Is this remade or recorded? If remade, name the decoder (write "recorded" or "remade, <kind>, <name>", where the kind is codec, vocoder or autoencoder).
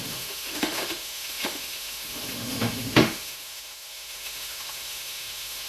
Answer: remade, autoencoder, DAC-VAE